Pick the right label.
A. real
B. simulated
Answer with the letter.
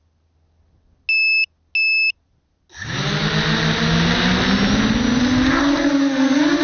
A